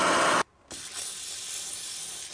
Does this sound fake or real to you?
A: real